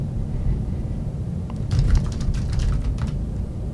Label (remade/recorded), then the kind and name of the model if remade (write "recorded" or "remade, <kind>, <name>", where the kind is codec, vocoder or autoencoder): remade, vocoder, BigVGAN v2